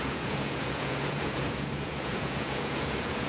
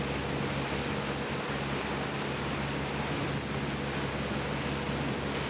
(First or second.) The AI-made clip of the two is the first